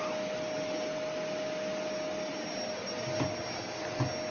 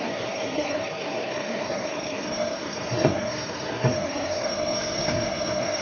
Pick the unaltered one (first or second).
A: first